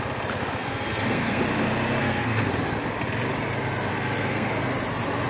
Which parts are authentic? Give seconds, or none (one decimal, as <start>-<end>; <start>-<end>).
0.0-0.6; 1.4-2.0; 2.5-3.9; 4.5-5.3